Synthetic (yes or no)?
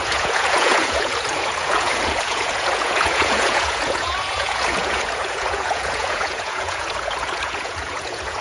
yes